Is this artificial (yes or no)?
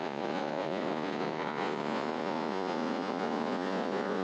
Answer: yes